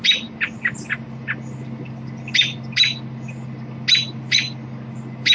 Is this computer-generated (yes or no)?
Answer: no